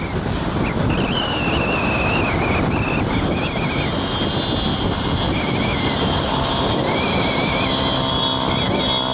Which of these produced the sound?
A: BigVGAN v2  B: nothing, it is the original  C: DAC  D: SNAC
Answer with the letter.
B